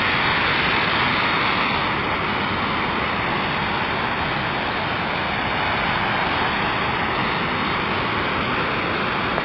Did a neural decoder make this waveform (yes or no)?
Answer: no